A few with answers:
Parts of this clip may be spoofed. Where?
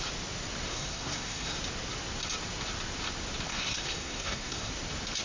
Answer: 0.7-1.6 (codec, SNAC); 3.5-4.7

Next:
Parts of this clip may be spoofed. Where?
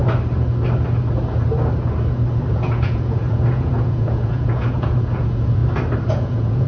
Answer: 2.5-5.6 (vocoder, Vocos); 6.1-6.7